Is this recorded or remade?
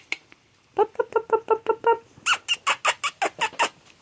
recorded